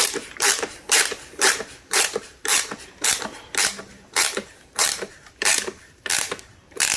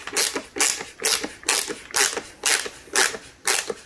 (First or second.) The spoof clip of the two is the first